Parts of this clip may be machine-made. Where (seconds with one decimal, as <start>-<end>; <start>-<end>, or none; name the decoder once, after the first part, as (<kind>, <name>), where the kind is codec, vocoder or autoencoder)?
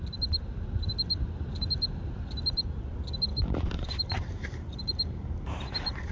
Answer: 3.3-6.1 (vocoder, BigVGAN v2)